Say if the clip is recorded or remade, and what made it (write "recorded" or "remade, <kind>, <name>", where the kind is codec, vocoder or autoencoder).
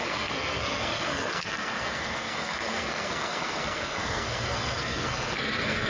remade, codec, SNAC